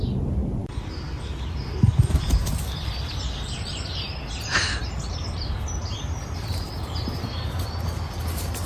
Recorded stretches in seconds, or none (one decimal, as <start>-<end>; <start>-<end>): 0.0-8.7